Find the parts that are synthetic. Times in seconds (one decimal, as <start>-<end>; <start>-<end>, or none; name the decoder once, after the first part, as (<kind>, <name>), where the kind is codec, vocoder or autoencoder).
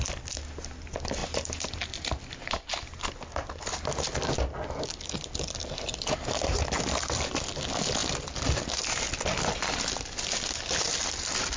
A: none